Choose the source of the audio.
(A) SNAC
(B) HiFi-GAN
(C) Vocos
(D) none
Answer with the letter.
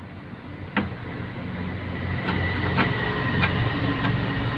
D